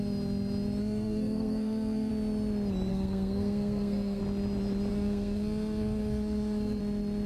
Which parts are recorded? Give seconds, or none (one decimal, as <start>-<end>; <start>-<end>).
0.0-0.8; 2.1-2.9; 4.2-4.9; 6.8-7.3